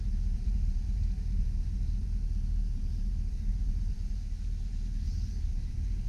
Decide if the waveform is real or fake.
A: fake